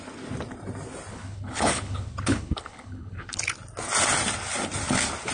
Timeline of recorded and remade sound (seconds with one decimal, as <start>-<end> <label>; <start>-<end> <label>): 0.0-1.1 recorded; 1.1-3.4 remade; 3.4-5.3 recorded